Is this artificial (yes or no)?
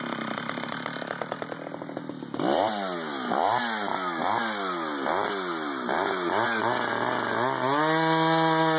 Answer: no